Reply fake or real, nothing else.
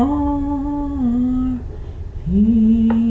real